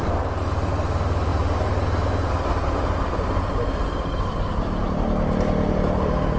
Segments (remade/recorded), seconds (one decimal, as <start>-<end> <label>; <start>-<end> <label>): 0.0-6.4 recorded